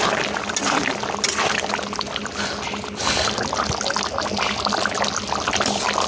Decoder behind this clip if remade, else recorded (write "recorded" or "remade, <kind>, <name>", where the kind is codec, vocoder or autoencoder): recorded